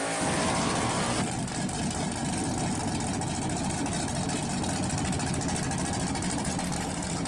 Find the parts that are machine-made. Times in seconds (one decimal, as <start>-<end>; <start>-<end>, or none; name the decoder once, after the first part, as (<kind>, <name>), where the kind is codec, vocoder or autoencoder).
none